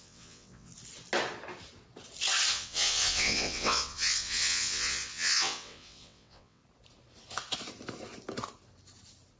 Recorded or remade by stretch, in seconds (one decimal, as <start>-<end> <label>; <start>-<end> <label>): 0.0-0.7 remade; 0.7-2.5 recorded; 2.5-6.6 remade; 6.6-9.4 recorded